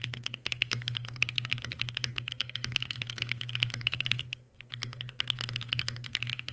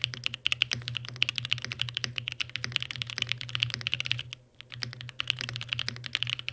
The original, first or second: second